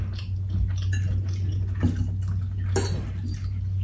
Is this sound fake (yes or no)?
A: no